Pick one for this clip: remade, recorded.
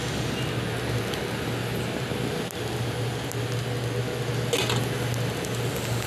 recorded